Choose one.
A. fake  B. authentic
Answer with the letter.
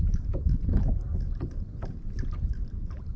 B